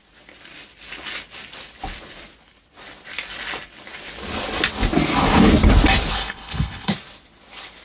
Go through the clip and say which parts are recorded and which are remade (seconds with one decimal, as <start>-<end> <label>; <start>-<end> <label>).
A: 0.0-6.1 recorded; 6.1-6.9 remade; 6.9-7.8 recorded